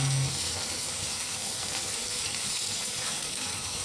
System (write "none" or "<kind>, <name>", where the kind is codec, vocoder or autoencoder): codec, SNAC